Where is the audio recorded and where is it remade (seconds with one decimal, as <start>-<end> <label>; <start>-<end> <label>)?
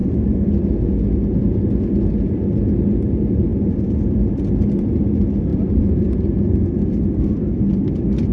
0.0-3.5 recorded; 3.5-4.6 remade; 4.6-5.5 recorded; 5.5-6.1 remade; 6.1-8.3 recorded